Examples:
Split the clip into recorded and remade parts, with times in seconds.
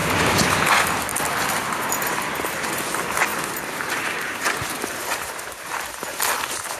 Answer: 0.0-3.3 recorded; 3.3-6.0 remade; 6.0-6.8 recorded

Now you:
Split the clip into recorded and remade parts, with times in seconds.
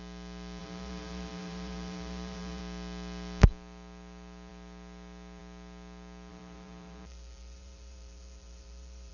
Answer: 0.0-0.6 recorded; 0.6-2.6 remade; 2.6-6.3 recorded; 6.3-9.1 remade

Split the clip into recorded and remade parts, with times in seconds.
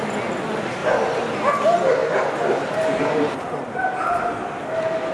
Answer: 0.0-5.1 recorded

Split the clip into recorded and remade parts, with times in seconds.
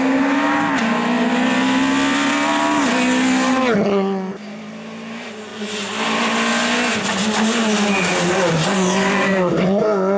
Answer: 0.0-10.2 recorded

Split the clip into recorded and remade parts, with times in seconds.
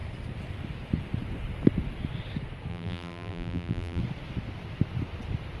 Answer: 0.0-2.7 recorded; 2.7-4.0 remade; 4.0-5.6 recorded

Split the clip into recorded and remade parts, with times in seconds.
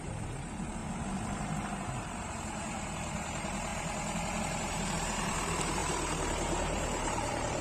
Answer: 0.0-0.8 remade; 0.8-1.9 recorded; 1.9-3.7 remade; 3.7-4.4 recorded; 4.4-7.6 remade